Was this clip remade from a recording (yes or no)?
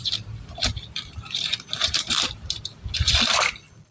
yes